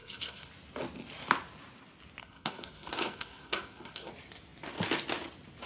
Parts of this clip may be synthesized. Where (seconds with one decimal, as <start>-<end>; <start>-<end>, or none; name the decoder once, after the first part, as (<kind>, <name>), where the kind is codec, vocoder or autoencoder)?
0.0-0.5 (codec, SNAC); 2.2-4.1